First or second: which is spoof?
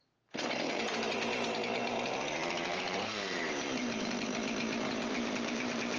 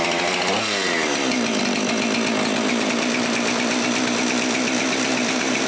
first